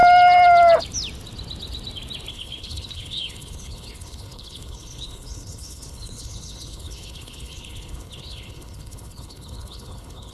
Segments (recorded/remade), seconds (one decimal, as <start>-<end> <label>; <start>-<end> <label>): 0.0-2.3 recorded; 2.3-10.3 remade